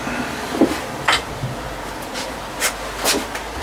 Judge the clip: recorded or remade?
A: recorded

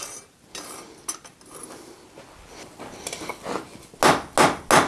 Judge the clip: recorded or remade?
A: recorded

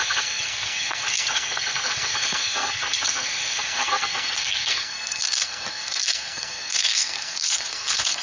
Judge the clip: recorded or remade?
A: remade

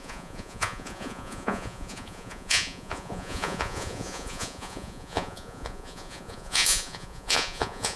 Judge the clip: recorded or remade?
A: remade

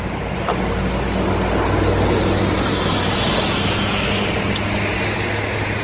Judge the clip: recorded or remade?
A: recorded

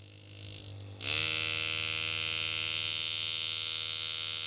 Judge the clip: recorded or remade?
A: recorded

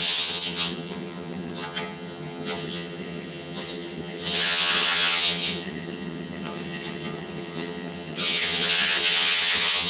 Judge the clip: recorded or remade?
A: remade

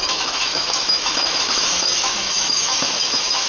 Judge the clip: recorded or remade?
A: remade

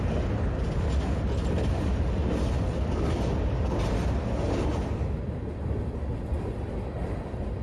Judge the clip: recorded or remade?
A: recorded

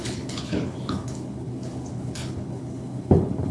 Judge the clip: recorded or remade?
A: remade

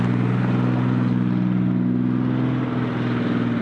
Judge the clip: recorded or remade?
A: recorded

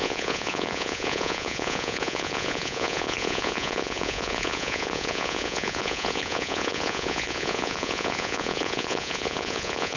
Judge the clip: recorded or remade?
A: remade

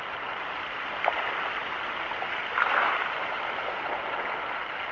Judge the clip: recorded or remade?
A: recorded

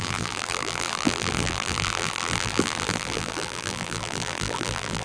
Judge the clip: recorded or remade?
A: remade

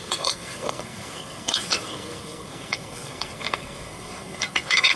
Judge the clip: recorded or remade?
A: remade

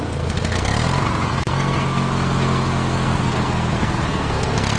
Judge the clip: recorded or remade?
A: remade